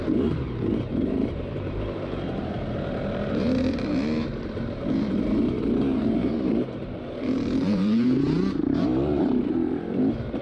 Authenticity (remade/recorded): remade